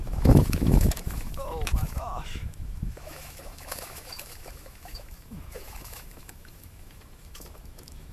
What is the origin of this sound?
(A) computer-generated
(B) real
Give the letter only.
A